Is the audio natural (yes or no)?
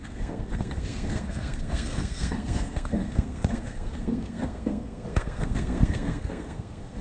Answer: no